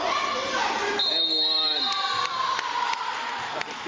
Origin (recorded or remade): recorded